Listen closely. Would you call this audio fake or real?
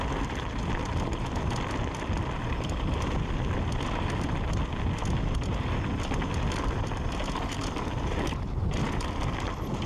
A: real